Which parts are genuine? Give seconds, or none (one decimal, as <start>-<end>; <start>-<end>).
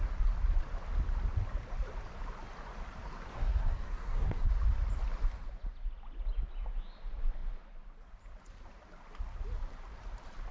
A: 0.0-3.3; 4.5-10.5